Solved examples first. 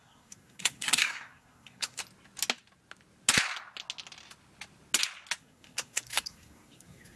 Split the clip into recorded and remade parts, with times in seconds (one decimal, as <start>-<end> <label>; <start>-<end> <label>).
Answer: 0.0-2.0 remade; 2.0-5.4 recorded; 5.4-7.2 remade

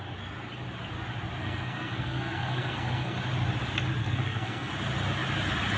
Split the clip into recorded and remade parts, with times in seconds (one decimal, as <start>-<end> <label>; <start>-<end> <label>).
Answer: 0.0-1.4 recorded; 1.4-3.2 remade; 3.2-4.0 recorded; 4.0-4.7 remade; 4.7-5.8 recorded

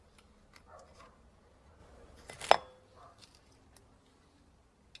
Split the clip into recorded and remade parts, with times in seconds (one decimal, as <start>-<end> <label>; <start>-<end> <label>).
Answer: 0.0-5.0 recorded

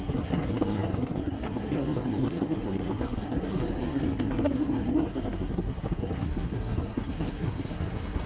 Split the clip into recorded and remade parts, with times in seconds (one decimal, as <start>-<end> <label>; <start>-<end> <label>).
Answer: 0.0-8.3 remade

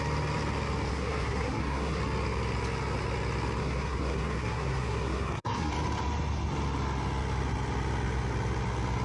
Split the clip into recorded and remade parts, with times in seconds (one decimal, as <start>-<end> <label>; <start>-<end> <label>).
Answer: 0.0-0.9 recorded; 0.9-2.0 remade; 2.0-3.6 recorded; 3.6-5.7 remade; 5.7-9.0 recorded